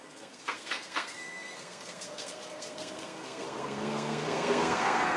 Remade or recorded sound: remade